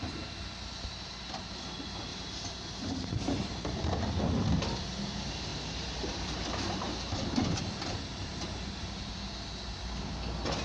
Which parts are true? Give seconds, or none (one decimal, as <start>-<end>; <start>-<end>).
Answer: 0.0-2.1; 4.0-5.5; 9.1-10.6